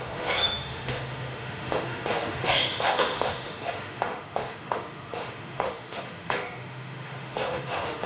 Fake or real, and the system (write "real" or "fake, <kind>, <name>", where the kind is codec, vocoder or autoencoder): fake, autoencoder, DAC-VAE